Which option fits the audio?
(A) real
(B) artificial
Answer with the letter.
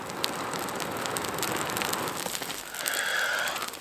A